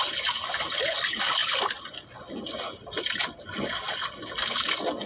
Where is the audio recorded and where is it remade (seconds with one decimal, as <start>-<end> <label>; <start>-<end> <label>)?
0.0-5.1 recorded